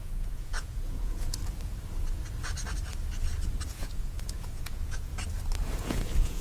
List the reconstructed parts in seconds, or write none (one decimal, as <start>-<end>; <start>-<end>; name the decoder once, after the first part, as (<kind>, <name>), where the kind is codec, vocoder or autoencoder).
0.0-1.4 (vocoder, Vocos); 3.7-5.1; 5.8-6.4